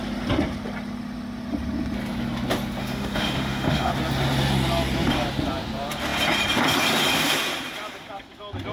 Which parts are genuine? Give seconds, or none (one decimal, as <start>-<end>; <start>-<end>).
0.0-2.8; 3.9-8.7